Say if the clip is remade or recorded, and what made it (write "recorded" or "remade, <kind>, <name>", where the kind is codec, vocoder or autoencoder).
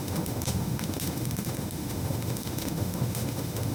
remade, autoencoder, DAC-VAE